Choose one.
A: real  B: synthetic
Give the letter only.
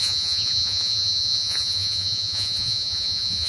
B